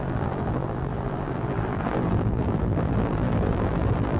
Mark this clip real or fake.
fake